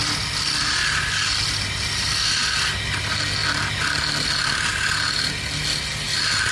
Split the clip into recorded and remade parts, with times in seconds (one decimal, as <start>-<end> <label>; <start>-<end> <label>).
0.0-6.5 recorded